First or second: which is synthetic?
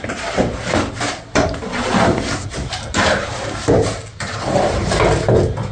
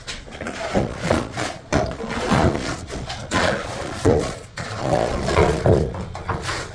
second